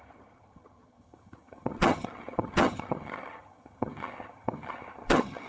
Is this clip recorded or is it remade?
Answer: remade